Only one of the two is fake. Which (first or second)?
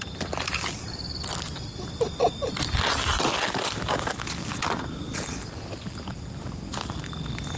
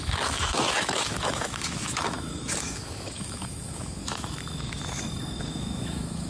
second